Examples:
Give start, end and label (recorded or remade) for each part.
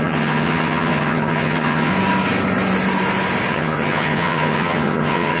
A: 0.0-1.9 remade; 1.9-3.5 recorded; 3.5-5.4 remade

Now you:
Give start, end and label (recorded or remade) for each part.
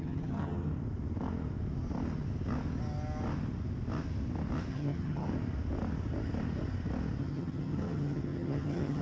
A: 0.0-0.7 remade; 0.7-4.7 recorded; 4.7-5.3 remade; 5.3-7.2 recorded; 7.2-9.0 remade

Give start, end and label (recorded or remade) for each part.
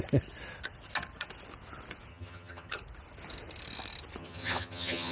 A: 0.0-2.1 recorded; 2.1-2.7 remade; 2.7-4.2 recorded; 4.2-5.1 remade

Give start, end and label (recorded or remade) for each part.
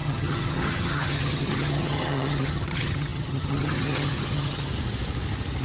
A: 0.0-4.7 remade; 4.7-5.6 recorded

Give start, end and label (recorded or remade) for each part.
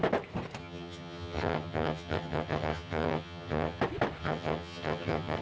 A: 0.0-0.6 recorded; 0.6-3.8 remade; 3.8-4.2 recorded; 4.2-5.4 remade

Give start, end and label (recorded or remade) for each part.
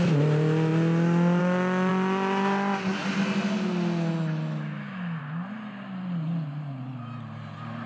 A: 0.0-7.9 recorded